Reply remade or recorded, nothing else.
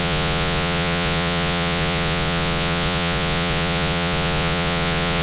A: remade